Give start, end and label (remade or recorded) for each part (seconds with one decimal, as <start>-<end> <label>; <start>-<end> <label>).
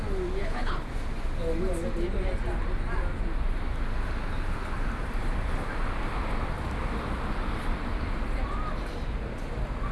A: 0.0-0.4 recorded; 0.4-0.9 remade; 0.9-9.9 recorded